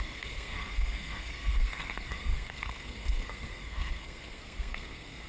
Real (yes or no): no